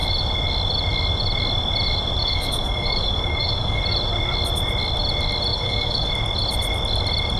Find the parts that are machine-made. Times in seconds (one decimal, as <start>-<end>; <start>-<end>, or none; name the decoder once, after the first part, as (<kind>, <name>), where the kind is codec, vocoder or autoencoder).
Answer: 2.2-3.8 (codec, DAC); 5.5-6.1